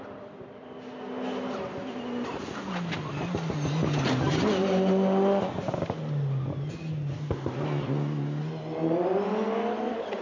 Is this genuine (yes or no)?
yes